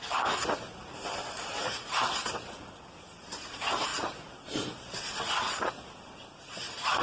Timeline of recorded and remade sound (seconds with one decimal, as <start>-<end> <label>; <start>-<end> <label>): 0.0-7.0 recorded